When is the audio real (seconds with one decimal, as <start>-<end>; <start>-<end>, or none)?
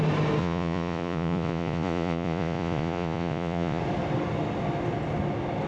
0.0-0.4; 3.8-5.7